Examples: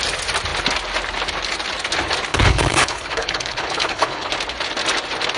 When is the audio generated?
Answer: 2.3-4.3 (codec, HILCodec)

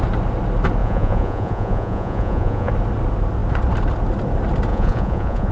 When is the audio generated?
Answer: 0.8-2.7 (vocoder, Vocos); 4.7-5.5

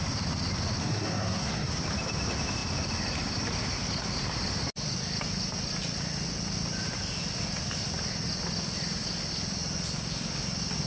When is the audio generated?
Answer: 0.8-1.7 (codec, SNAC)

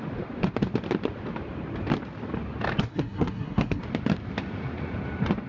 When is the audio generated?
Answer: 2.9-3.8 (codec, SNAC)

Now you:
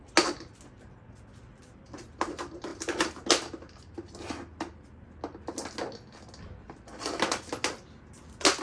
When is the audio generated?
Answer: none